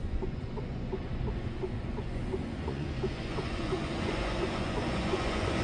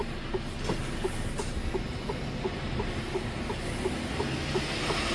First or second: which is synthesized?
first